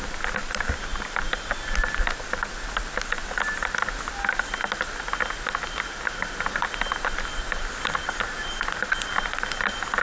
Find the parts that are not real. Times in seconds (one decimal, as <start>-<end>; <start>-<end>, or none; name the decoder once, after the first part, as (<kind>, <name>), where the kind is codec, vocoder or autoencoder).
none